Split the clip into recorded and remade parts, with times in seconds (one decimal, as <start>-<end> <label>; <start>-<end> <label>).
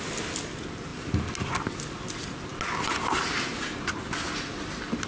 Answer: 0.0-5.1 recorded